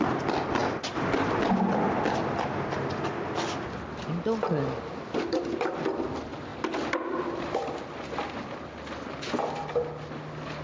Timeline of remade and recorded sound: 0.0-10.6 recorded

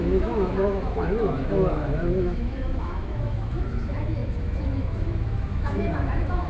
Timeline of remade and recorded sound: 0.0-6.5 remade

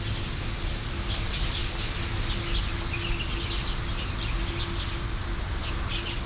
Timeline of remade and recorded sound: 0.0-6.3 recorded

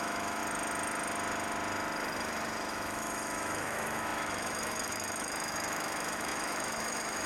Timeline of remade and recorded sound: 0.0-0.4 remade; 0.4-2.7 recorded; 2.7-7.3 remade